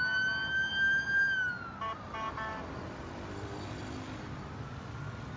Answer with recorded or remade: recorded